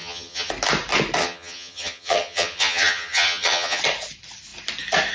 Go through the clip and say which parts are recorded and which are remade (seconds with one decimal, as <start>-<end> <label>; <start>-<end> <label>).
0.0-0.5 remade; 0.5-1.2 recorded; 1.2-3.8 remade; 3.8-5.1 recorded